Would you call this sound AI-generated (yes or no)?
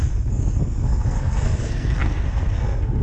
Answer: yes